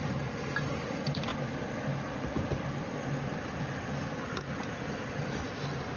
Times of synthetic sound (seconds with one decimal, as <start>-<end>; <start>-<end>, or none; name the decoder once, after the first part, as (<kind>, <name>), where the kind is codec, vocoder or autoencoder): 0.0-1.3 (vocoder, BigVGAN v2); 4.9-6.0